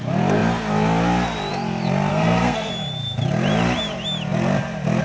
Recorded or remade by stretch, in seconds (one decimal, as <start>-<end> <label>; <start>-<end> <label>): 0.0-2.1 recorded; 2.1-2.7 remade; 2.7-5.0 recorded